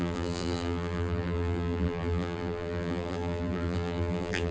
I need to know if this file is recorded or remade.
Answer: remade